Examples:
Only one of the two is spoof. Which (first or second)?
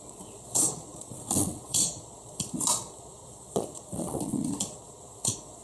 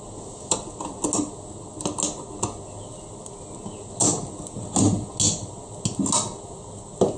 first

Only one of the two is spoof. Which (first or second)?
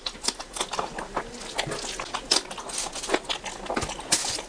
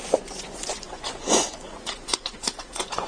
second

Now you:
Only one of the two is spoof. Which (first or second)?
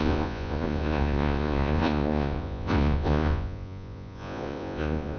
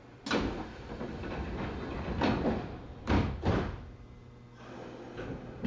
first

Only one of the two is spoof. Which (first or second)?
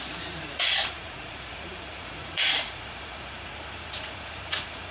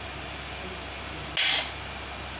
first